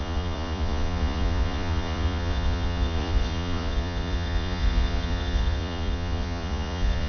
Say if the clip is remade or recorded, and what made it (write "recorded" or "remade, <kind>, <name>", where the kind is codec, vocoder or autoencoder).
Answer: remade, vocoder, Vocos